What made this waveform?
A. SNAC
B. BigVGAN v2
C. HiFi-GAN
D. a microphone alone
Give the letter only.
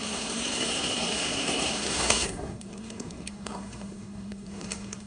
A